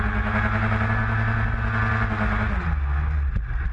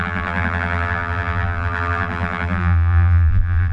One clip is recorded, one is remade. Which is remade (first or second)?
second